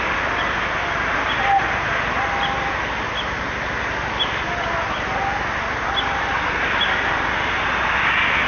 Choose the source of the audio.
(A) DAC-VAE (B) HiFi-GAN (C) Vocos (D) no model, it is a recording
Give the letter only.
D